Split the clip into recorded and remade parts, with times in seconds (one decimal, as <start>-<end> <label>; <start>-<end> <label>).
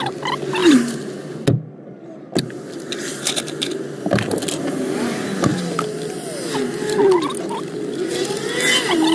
0.0-9.1 recorded